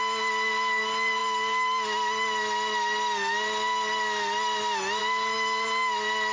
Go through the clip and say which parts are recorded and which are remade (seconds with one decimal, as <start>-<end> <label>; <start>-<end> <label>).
0.0-6.3 recorded